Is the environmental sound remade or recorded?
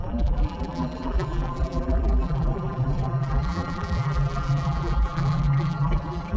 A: remade